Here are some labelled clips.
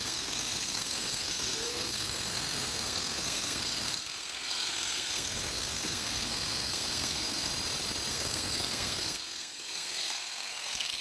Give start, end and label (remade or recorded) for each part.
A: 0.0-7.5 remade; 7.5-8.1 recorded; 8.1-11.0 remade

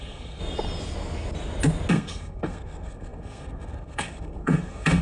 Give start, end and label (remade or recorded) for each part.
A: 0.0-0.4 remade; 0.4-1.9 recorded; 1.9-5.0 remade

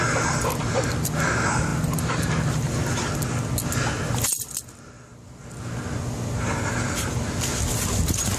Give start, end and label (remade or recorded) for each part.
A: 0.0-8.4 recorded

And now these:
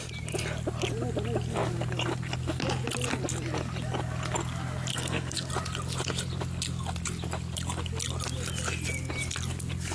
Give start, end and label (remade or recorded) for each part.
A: 0.0-4.9 recorded; 4.9-5.5 remade; 5.5-9.9 recorded

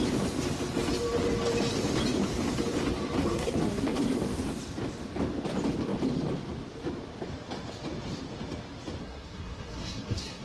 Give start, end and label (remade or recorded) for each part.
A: 0.0-3.2 recorded; 3.2-4.0 remade; 4.0-9.0 recorded; 9.0-10.4 remade

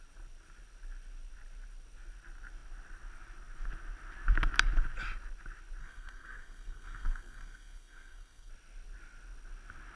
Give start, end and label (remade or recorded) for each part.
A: 0.0-5.8 recorded; 5.8-8.5 remade; 8.5-10.0 recorded

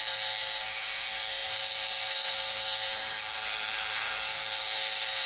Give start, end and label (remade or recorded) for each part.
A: 0.0-5.3 remade

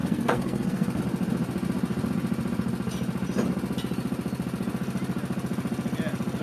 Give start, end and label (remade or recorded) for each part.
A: 0.0-1.0 remade; 1.0-6.4 recorded